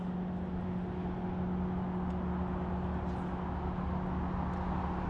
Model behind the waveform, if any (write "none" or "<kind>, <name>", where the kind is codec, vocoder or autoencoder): none